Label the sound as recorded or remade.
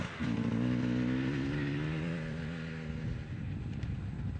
recorded